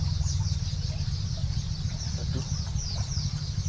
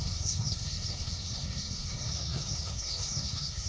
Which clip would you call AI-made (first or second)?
second